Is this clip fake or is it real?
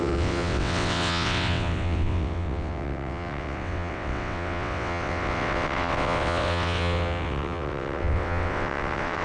fake